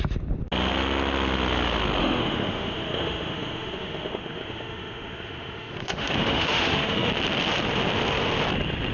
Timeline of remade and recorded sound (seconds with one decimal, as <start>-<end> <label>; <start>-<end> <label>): 0.0-2.0 recorded; 2.0-7.1 remade; 7.1-8.9 recorded